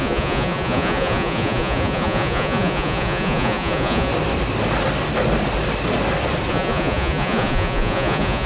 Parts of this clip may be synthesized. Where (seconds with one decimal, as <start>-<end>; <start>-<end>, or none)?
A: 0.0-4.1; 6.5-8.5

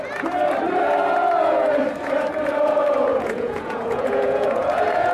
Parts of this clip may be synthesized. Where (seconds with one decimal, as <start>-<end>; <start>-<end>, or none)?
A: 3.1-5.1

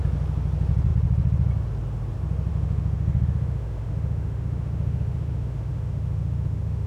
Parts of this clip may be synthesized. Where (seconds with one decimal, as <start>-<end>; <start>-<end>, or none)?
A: 2.5-6.9

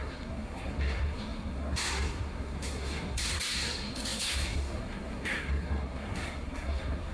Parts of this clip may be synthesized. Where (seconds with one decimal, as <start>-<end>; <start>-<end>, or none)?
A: 0.0-7.1

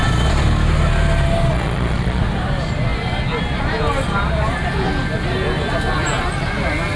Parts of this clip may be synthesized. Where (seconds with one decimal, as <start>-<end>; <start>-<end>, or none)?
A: 1.5-2.2

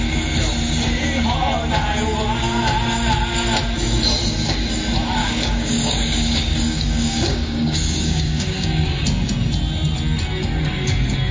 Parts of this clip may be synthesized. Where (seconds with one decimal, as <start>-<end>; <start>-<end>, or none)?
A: 5.2-9.0